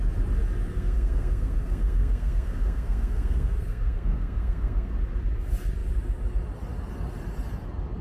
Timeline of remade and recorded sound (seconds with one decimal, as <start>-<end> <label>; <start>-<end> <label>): 0.0-0.7 recorded; 0.7-4.9 remade; 4.9-8.0 recorded